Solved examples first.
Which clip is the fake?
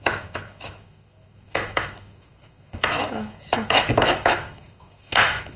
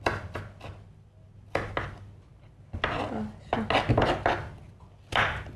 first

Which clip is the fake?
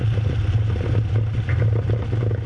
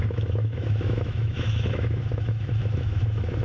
second